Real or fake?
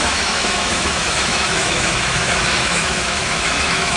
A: fake